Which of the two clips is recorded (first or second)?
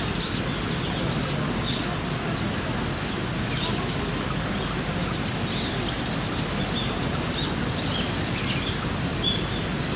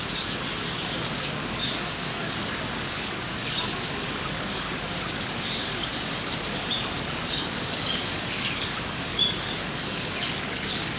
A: first